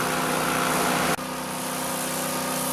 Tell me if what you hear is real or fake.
real